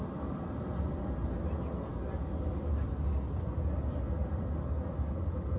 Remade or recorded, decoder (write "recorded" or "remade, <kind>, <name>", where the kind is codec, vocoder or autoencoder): recorded